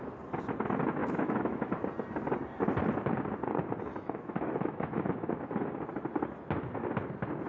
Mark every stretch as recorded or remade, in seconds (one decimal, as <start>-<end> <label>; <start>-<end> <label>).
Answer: 0.0-1.0 recorded; 1.0-1.7 remade; 1.7-3.9 recorded; 3.9-5.3 remade; 5.3-7.5 recorded